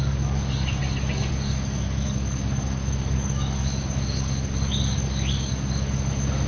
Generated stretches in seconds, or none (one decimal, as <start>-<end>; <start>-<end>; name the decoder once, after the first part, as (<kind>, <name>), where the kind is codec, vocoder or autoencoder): 0.0-6.5 (codec, DAC)